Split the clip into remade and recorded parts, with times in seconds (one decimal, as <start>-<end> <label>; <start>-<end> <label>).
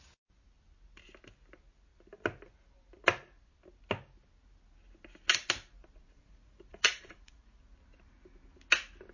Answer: 0.0-6.0 recorded; 6.0-7.6 remade; 7.6-9.1 recorded